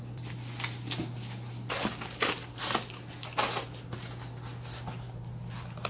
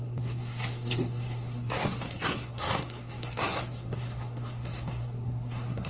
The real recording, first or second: first